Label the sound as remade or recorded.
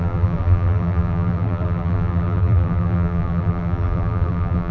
remade